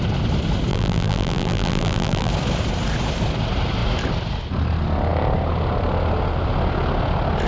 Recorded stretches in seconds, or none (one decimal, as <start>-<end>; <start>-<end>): 0.0-0.7; 2.3-7.5